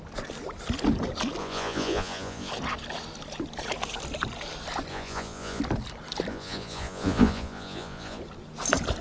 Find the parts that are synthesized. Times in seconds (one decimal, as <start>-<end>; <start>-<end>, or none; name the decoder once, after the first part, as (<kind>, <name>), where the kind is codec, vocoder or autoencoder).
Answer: 1.4-2.5 (vocoder, Vocos); 4.9-5.6; 6.3-8.2